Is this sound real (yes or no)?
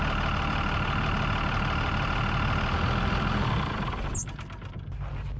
yes